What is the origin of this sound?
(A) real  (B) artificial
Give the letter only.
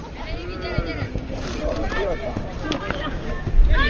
A